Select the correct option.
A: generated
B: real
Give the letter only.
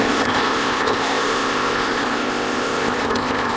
A